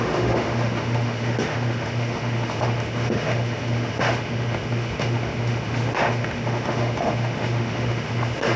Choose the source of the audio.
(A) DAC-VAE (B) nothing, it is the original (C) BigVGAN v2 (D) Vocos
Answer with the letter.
A